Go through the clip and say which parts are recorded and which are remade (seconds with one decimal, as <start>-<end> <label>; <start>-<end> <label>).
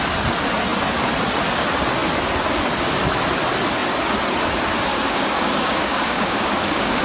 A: 0.0-4.9 recorded; 4.9-7.0 remade